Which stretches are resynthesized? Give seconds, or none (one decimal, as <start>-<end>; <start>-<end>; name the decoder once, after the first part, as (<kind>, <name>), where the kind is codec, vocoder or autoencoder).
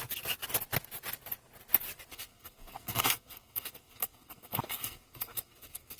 2.1-6.0 (codec, SNAC)